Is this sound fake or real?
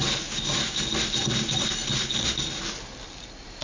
real